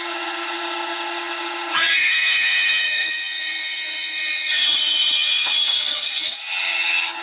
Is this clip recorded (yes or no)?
no